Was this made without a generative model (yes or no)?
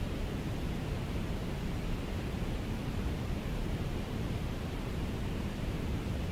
no